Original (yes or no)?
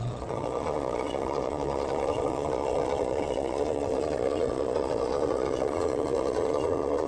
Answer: no